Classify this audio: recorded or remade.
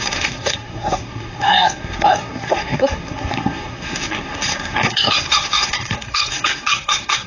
remade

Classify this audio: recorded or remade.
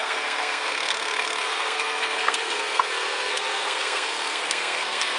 remade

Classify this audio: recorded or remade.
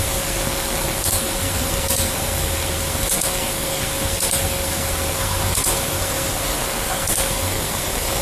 remade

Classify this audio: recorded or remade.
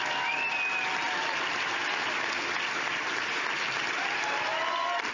recorded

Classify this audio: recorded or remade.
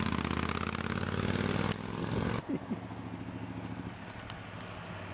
recorded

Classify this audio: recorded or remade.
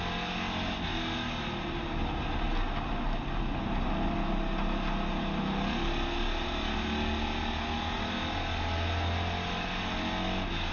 recorded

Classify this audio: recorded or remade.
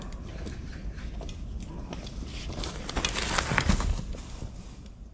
recorded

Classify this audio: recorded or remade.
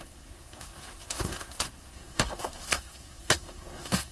remade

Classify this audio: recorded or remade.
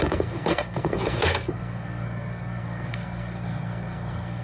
remade